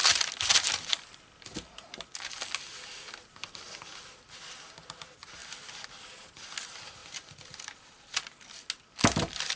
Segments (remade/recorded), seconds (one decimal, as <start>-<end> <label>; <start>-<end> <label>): 0.0-9.6 recorded